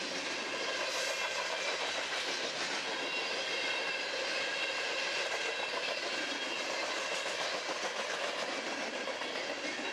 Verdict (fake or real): real